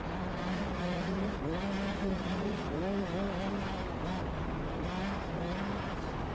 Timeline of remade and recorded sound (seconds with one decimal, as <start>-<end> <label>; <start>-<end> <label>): 0.0-0.5 recorded; 0.5-1.3 remade; 1.3-1.9 recorded; 1.9-2.8 remade; 2.8-6.3 recorded